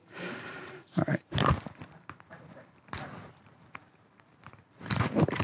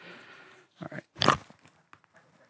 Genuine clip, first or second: second